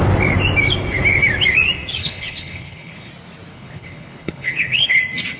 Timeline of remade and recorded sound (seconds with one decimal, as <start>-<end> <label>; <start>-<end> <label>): 0.0-2.0 recorded; 2.0-3.1 remade; 3.1-3.5 recorded; 3.5-5.0 remade; 5.0-5.4 recorded